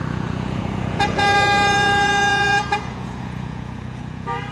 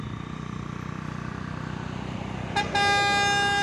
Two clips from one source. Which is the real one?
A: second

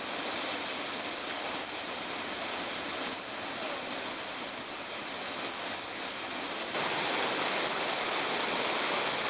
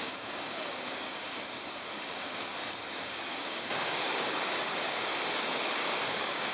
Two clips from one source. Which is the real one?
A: first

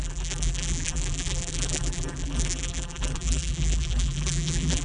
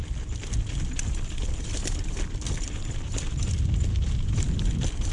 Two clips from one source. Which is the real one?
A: second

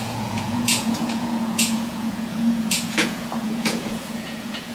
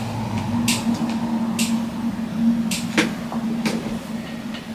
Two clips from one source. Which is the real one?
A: second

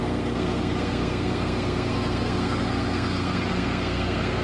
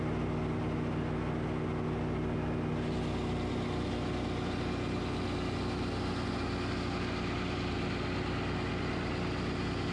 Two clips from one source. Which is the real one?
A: second